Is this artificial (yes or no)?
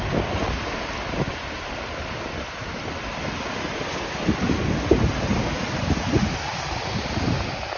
no